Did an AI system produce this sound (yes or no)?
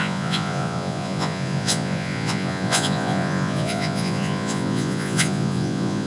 yes